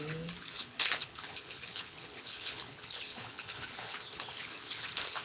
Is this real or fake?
fake